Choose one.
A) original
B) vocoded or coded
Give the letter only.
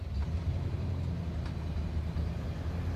A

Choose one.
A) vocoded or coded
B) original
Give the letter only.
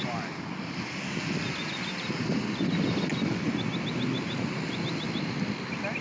B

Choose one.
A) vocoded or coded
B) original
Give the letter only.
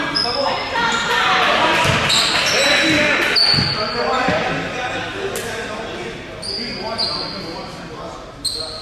B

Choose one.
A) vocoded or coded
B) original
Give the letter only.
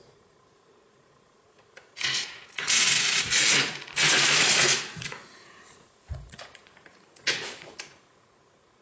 A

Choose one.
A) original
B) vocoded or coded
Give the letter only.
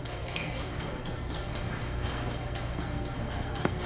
B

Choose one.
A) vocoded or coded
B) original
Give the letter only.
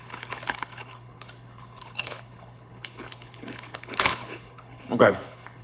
A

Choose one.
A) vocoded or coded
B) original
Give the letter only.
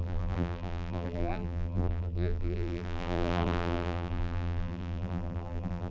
A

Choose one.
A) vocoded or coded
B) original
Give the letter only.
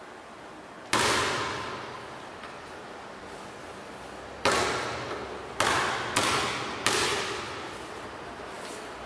B